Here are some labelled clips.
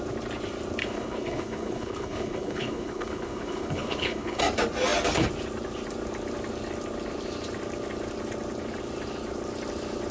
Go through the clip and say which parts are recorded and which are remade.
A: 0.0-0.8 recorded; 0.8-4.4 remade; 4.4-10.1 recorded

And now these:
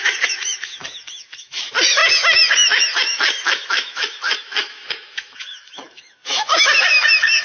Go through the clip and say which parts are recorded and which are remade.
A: 0.0-7.4 remade

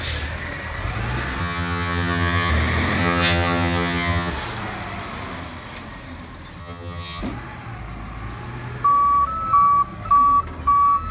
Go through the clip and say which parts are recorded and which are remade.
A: 0.0-1.4 recorded; 1.4-2.5 remade; 2.5-3.0 recorded; 3.0-4.3 remade; 4.3-6.6 recorded; 6.6-7.2 remade; 7.2-11.1 recorded

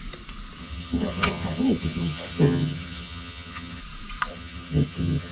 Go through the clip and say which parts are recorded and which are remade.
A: 0.0-0.6 recorded; 0.6-3.8 remade; 3.8-4.3 recorded; 4.3-5.3 remade

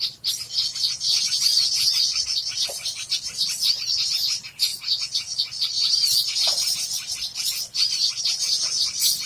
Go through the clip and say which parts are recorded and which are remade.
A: 0.0-9.3 recorded